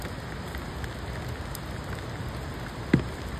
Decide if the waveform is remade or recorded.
recorded